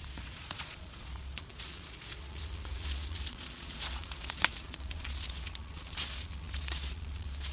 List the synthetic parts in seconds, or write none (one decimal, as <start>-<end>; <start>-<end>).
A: 0.0-7.5